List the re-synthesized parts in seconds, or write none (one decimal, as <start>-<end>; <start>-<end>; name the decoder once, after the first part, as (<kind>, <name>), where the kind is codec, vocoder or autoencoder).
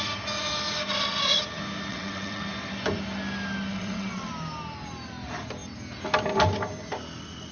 1.9-2.4 (vocoder, WaveNeXt); 3.7-4.3